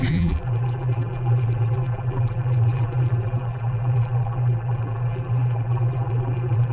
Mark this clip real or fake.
fake